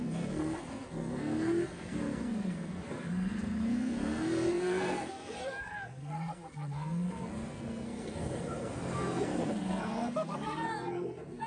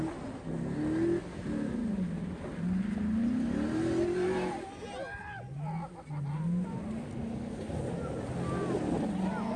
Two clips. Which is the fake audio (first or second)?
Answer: first